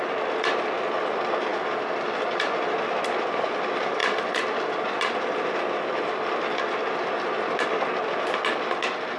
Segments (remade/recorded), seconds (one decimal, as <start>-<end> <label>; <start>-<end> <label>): 0.0-9.2 recorded